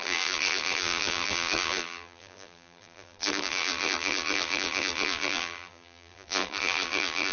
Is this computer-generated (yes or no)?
yes